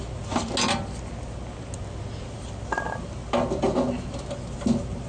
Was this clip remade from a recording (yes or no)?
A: no